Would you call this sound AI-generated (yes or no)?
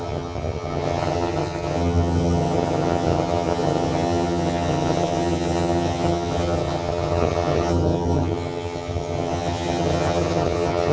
yes